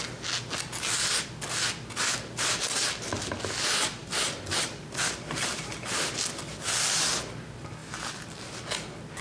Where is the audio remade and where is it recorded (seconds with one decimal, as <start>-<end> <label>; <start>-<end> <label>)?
0.0-4.0 recorded; 4.0-7.0 remade; 7.0-9.2 recorded